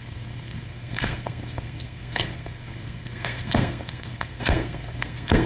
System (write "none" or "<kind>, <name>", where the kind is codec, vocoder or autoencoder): codec, SNAC